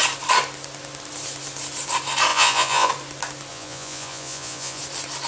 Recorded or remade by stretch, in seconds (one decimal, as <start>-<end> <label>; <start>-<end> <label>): 0.0-2.3 recorded; 2.3-2.9 remade; 2.9-3.5 recorded; 3.5-4.8 remade; 4.8-5.3 recorded